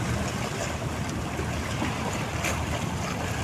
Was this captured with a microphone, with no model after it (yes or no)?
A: yes